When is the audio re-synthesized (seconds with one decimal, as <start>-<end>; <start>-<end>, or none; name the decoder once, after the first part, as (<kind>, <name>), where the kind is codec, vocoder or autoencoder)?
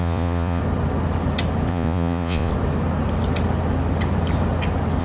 0.0-0.6 (vocoder, Vocos); 1.7-2.5